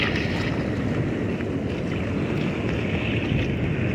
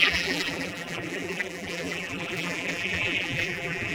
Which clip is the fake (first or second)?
second